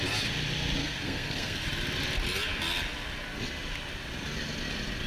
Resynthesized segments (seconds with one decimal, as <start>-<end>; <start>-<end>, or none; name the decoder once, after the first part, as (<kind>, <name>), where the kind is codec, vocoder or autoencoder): 0.8-1.6 (codec, SNAC)